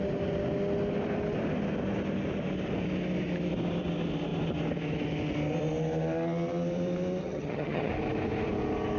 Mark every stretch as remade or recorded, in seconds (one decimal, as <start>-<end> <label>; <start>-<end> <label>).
0.0-7.2 recorded; 7.2-7.9 remade; 7.9-9.0 recorded